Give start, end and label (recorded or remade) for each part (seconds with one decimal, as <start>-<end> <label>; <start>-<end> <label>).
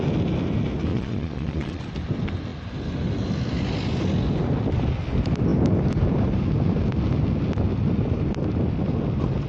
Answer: 0.0-0.9 recorded; 0.9-1.8 remade; 1.8-9.5 recorded